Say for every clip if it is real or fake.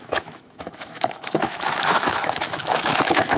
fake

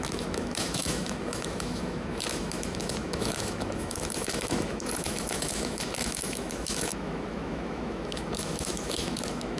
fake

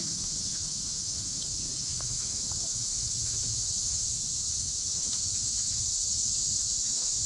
fake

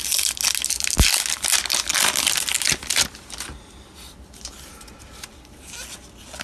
real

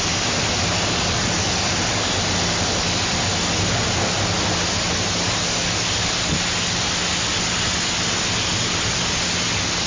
real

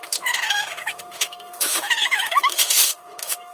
fake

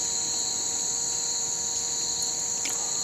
real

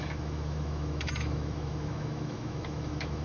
fake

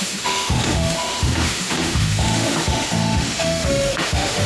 fake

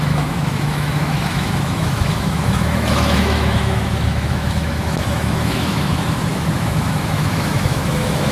fake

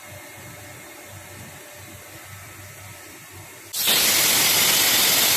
real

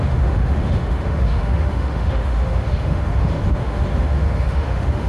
fake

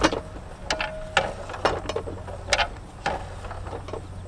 real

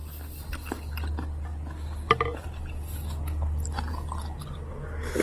real